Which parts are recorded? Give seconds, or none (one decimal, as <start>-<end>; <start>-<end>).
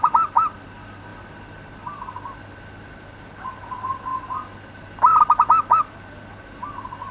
0.0-7.1